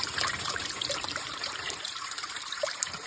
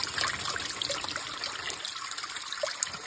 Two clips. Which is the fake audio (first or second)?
first